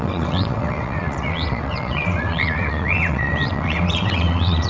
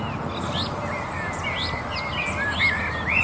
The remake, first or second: first